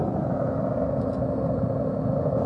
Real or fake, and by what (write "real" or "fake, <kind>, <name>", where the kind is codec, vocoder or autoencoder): real